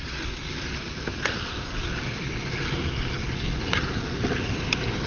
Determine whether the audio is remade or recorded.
recorded